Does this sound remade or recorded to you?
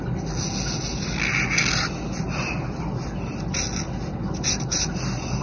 recorded